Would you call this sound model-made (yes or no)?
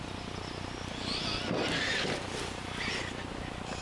no